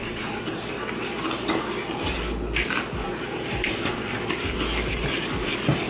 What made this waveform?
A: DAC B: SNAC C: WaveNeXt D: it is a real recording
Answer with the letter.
D